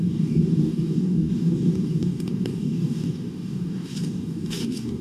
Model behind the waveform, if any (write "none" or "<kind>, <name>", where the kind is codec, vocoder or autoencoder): codec, DAC